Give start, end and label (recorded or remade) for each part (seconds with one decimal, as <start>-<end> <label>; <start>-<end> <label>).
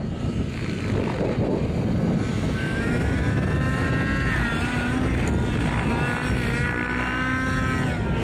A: 0.0-2.3 recorded; 2.3-3.9 remade; 3.9-8.2 recorded